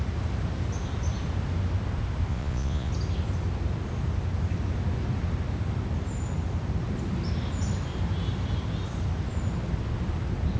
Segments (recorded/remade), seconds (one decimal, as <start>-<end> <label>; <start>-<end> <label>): 0.0-2.3 recorded; 2.3-2.9 remade; 2.9-10.6 recorded